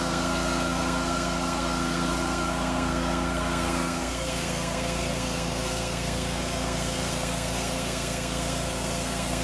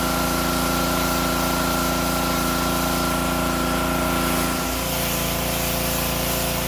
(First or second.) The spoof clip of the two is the first